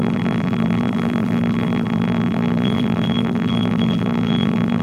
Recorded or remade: remade